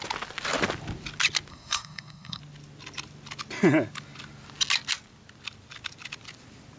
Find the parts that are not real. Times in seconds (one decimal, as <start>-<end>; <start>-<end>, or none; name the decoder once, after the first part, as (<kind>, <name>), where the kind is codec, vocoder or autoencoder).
1.5-2.4 (codec, SNAC)